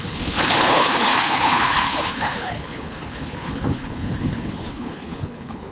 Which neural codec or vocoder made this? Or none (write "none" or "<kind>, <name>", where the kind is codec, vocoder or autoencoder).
codec, HILCodec